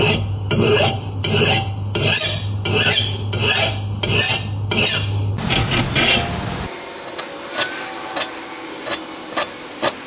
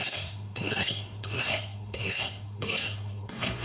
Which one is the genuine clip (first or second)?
first